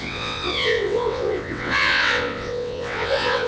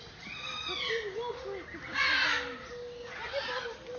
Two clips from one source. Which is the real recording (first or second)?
second